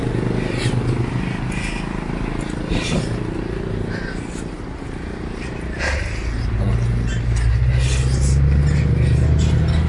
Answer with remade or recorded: recorded